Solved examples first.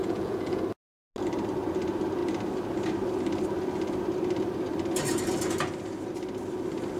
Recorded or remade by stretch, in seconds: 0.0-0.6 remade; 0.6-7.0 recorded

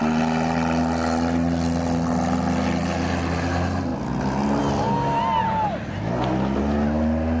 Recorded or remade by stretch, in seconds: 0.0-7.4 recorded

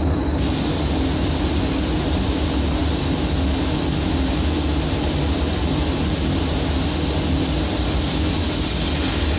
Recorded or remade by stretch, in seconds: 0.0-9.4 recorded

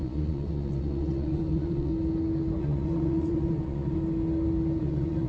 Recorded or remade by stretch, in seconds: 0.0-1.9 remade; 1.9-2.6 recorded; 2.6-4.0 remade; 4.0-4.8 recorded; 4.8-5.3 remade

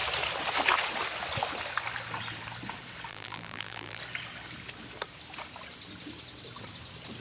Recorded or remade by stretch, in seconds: 0.0-3.1 recorded; 3.1-4.0 remade; 4.0-7.2 recorded

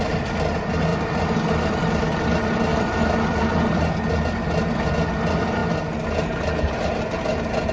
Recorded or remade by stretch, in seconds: 0.0-0.9 recorded; 0.9-2.0 remade; 2.0-2.7 recorded; 2.7-3.4 remade; 3.4-7.7 recorded